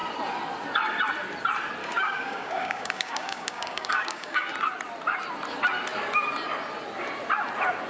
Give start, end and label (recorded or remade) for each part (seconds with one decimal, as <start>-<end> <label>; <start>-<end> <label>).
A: 0.0-1.8 recorded; 1.8-4.5 remade; 4.5-7.9 recorded